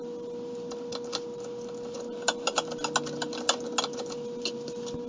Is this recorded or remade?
recorded